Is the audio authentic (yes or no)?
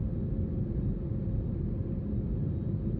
yes